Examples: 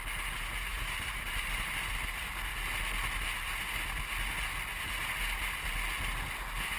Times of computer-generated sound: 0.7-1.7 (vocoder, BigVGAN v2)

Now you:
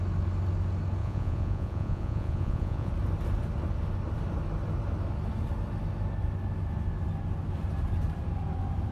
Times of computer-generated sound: 1.0-2.9 (vocoder, Vocos)

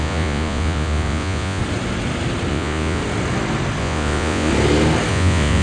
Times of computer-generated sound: 0.0-1.6 (vocoder, Vocos); 2.5-3.0; 3.8-4.5; 5.1-5.6

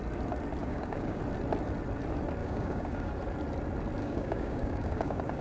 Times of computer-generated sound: 0.6-1.2 (codec, DAC); 2.4-3.1; 4.0-5.4